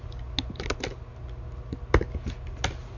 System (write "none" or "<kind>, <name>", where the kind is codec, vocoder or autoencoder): none